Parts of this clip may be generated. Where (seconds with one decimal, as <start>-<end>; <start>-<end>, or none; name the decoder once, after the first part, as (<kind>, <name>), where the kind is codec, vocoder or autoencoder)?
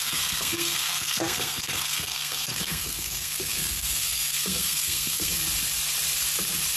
0.0-5.3 (codec, SNAC)